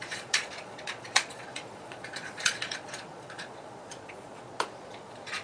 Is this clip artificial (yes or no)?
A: yes